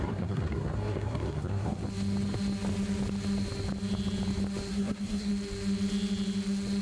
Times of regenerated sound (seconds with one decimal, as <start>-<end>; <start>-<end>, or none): 0.0-1.8; 4.7-5.3